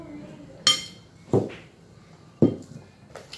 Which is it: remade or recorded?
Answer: recorded